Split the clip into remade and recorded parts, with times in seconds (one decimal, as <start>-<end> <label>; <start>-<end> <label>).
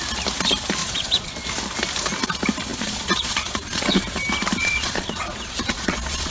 0.0-0.8 recorded; 0.8-1.3 remade; 1.3-2.7 recorded; 2.7-4.0 remade; 4.0-4.6 recorded; 4.6-6.3 remade